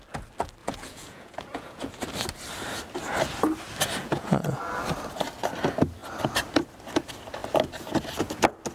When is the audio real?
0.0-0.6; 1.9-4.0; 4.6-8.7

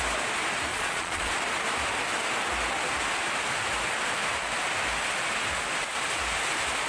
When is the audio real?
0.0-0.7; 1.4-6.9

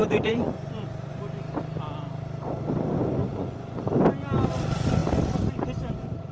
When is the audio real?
1.2-3.2; 3.8-6.3

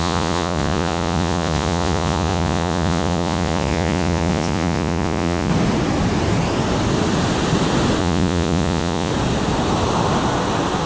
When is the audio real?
5.5-8.0; 9.1-10.9